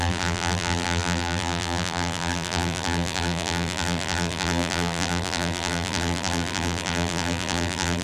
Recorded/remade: remade